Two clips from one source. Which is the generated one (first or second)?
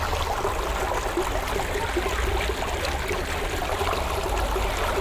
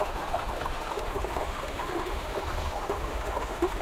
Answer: second